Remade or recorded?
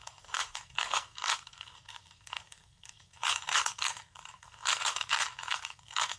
remade